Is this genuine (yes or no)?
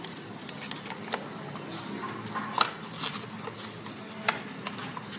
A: yes